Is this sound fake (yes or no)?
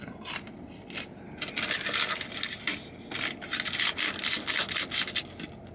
no